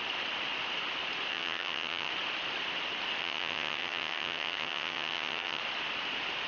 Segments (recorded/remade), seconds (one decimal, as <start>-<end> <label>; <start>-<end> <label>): 0.0-1.3 recorded; 1.3-2.1 remade; 2.1-3.2 recorded; 3.2-5.6 remade; 5.6-6.5 recorded